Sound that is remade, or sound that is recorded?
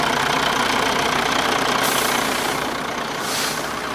recorded